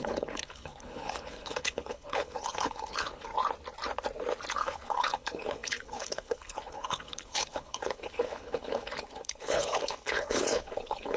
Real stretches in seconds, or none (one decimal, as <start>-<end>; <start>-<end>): 3.3-4.5

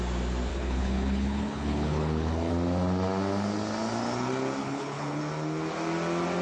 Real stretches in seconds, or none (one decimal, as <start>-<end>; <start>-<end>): 0.0-0.5; 2.5-4.6; 5.2-6.4

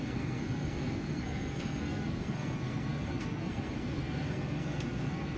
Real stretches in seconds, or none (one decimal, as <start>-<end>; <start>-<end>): none

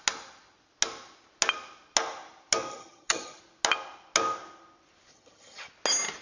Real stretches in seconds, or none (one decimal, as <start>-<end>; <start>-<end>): 0.0-2.7; 3.4-5.1; 5.7-6.2